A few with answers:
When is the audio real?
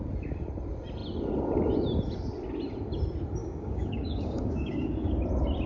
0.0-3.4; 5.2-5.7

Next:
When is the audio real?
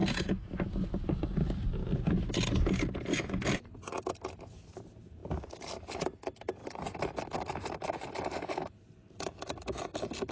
0.0-3.1; 4.7-6.6; 8.1-10.3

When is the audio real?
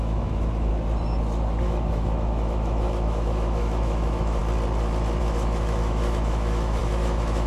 0.7-1.6; 4.4-5.2